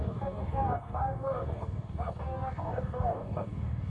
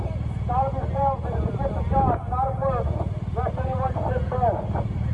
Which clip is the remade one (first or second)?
first